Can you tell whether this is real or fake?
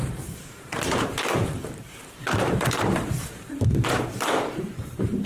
fake